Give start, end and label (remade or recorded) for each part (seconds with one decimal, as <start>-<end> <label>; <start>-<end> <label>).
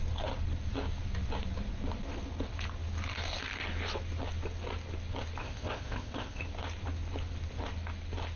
0.0-5.4 recorded; 5.4-6.4 remade; 6.4-8.4 recorded